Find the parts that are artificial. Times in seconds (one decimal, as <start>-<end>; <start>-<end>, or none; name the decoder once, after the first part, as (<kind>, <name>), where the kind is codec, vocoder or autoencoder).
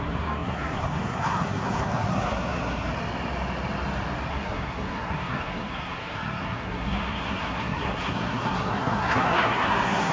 0.0-2.9 (codec, SNAC); 4.3-10.1